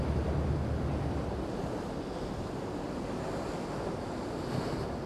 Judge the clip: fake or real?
real